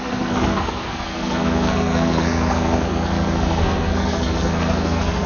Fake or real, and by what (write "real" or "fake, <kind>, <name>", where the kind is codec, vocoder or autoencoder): fake, codec, SNAC